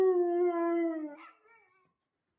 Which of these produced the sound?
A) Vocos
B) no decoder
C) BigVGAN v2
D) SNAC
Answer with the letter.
B